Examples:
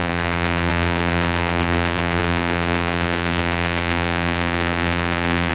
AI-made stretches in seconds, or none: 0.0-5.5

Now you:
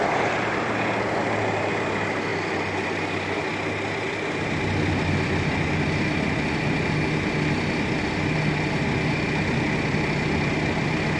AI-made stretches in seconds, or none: none